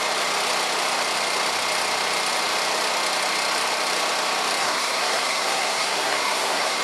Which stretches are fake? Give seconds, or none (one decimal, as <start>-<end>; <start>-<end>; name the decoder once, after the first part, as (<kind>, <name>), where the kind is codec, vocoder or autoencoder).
4.6-6.8 (codec, SNAC)